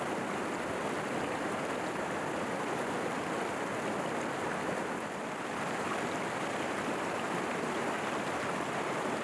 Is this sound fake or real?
real